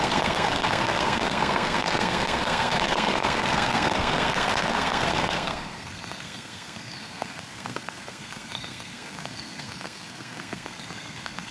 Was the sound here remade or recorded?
remade